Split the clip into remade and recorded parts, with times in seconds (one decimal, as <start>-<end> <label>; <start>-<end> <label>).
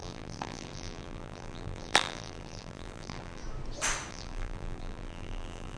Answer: 0.0-3.4 remade; 3.4-4.1 recorded; 4.1-5.8 remade